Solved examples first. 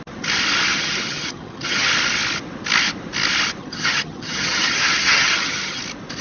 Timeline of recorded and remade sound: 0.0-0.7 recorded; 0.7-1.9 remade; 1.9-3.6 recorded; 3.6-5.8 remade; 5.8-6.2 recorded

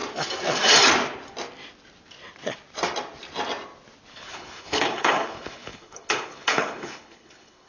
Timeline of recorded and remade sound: 0.0-4.1 recorded; 4.1-7.7 remade

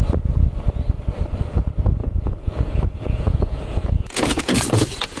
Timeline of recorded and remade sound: 0.0-2.0 recorded; 2.0-5.2 remade